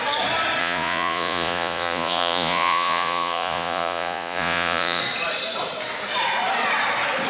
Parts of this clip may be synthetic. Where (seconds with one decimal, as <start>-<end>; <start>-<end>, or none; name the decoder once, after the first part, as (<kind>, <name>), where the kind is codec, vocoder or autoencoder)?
0.6-5.0 (vocoder, Vocos)